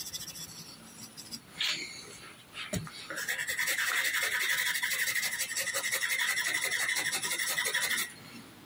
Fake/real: fake